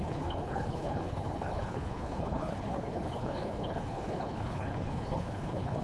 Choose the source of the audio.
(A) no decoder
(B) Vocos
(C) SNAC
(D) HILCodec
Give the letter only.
D